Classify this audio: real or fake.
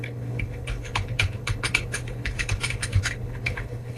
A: fake